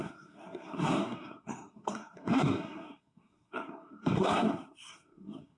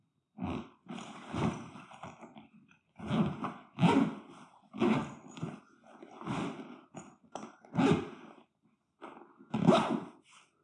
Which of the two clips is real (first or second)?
second